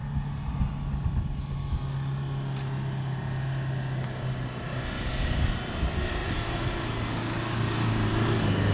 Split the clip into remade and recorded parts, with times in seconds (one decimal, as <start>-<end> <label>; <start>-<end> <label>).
0.0-6.2 recorded; 6.2-6.9 remade; 6.9-8.7 recorded